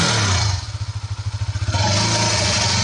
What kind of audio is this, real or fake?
real